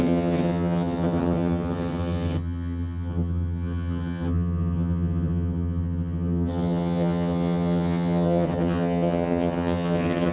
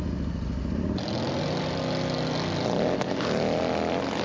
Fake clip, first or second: first